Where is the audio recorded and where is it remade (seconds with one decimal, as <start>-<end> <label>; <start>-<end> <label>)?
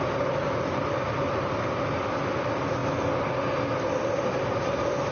0.0-5.1 recorded